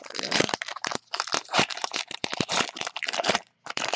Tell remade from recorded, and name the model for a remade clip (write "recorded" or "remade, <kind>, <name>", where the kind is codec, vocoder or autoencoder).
remade, vocoder, BigVGAN v2